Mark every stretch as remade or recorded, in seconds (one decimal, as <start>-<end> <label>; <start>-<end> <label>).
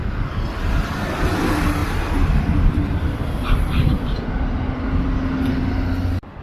0.0-1.4 remade; 1.4-1.8 recorded; 1.8-4.3 remade; 4.3-6.4 recorded